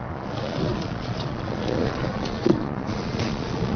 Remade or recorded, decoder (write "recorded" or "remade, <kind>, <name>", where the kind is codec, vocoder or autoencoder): remade, vocoder, Vocos